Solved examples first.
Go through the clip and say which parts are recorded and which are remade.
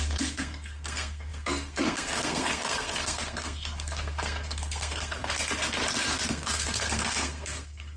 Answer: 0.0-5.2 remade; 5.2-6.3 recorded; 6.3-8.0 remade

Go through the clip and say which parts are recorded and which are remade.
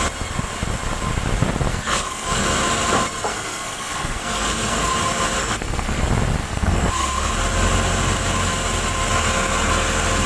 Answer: 0.0-1.7 recorded; 1.7-2.4 remade; 2.4-3.3 recorded; 3.3-4.9 remade; 4.9-5.4 recorded; 5.4-6.0 remade; 6.0-6.4 recorded; 6.4-7.3 remade; 7.3-10.3 recorded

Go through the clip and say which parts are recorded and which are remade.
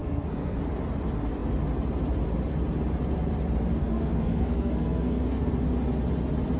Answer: 0.0-0.6 remade; 0.6-3.8 recorded; 3.8-5.5 remade; 5.5-6.6 recorded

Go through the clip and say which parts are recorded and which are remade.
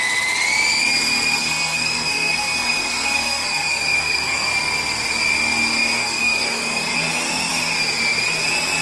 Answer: 0.0-1.4 recorded; 1.4-4.5 remade; 4.5-6.0 recorded; 6.0-7.5 remade; 7.5-8.8 recorded